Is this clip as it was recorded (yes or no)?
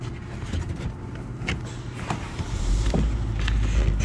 yes